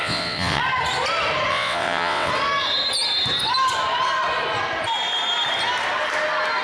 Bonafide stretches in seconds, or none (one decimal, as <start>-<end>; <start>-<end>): 0.6-1.5; 2.3-6.6